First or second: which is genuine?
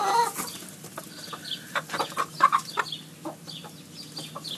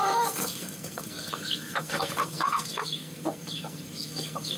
first